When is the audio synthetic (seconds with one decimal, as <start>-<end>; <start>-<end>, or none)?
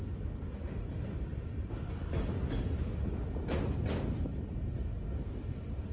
1.3-2.1